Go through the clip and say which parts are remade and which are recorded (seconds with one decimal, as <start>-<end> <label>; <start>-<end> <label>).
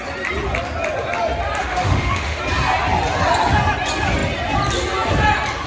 0.0-1.6 recorded; 1.6-2.4 remade; 2.4-5.7 recorded